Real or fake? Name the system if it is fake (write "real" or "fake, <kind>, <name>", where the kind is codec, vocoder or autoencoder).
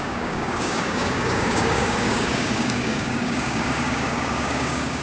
fake, codec, DAC